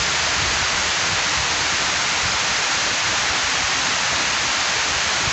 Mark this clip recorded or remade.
remade